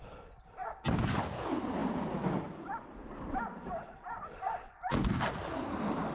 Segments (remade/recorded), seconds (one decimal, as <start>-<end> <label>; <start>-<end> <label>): 0.0-6.1 recorded